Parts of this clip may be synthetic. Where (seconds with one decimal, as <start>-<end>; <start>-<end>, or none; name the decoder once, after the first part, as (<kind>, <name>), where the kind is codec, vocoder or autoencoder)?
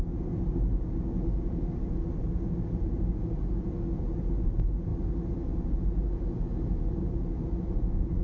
none